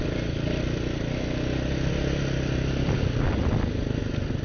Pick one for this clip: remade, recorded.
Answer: recorded